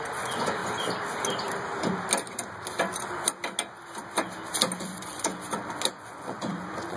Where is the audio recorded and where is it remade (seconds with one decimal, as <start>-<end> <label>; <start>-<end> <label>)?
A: 0.0-0.6 remade; 0.6-4.8 recorded; 4.8-5.3 remade; 5.3-5.9 recorded; 5.9-7.0 remade